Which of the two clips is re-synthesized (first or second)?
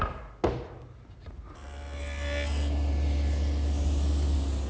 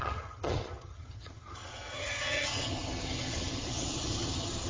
second